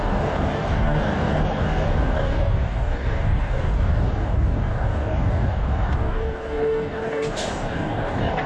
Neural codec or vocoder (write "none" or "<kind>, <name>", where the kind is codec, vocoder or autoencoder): codec, DAC